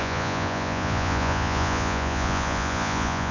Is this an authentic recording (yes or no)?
no